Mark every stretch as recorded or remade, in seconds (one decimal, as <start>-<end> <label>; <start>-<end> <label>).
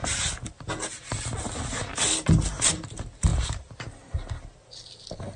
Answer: 0.0-5.4 recorded